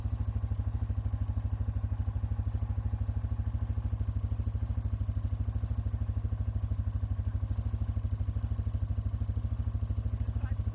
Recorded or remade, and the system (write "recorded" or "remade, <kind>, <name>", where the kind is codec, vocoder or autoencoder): recorded